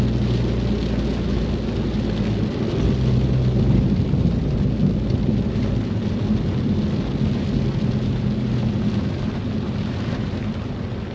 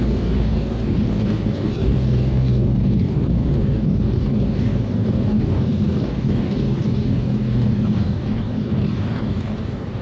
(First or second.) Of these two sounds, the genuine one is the first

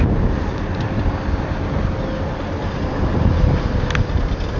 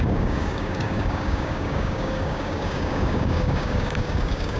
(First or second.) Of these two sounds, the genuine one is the first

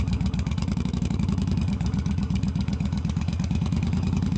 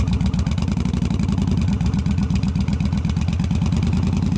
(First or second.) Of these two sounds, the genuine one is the second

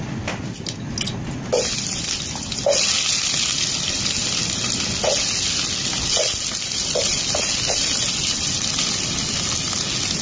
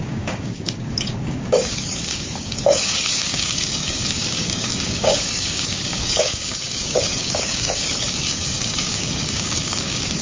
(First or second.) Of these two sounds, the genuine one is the first